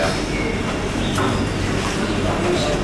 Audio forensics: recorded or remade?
recorded